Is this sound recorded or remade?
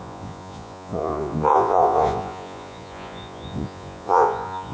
remade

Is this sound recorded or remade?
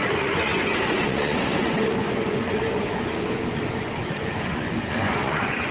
remade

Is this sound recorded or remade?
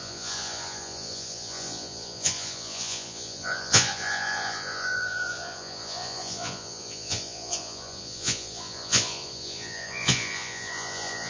remade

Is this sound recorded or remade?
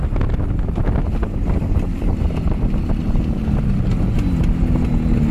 recorded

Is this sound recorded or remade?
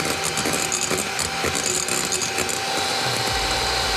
recorded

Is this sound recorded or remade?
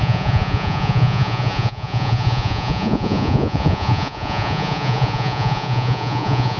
remade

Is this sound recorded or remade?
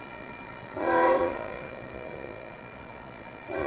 remade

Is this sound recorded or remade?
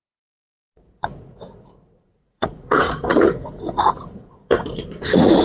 remade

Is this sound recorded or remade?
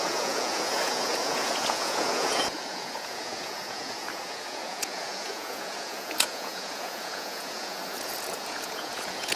remade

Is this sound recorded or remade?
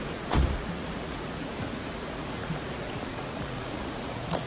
remade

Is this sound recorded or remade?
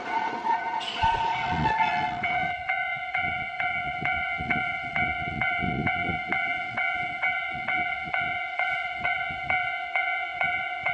remade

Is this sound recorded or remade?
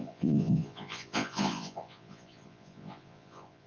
remade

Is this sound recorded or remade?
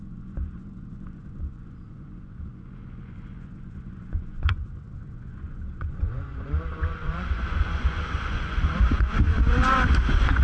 remade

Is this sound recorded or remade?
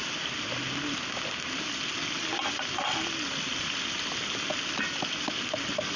recorded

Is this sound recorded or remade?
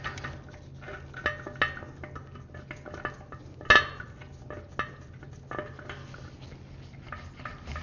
recorded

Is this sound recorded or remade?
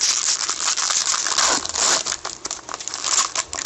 recorded